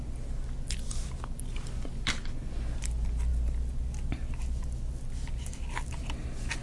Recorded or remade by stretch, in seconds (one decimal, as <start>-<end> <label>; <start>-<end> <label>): 0.0-6.6 recorded